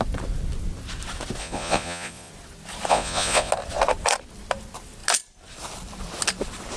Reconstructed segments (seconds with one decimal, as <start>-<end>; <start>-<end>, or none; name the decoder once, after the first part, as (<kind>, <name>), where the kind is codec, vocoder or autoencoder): 1.4-2.3 (vocoder, Vocos); 2.9-3.5